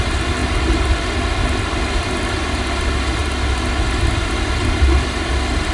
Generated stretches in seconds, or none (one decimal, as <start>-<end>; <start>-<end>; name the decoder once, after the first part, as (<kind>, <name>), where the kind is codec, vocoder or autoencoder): 0.0-0.4 (vocoder, BigVGAN v2); 1.9-3.2; 3.9-5.7